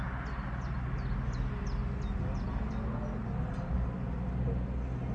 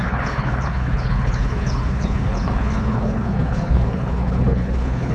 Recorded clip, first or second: first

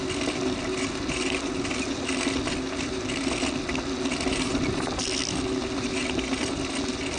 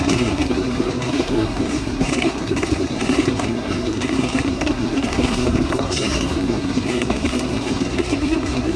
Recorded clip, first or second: first